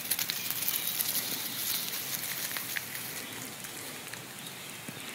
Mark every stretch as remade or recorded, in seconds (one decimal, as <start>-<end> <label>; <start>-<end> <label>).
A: 0.0-5.1 recorded